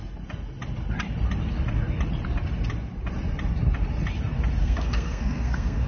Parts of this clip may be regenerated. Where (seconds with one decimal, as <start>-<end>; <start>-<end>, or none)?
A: 4.6-5.9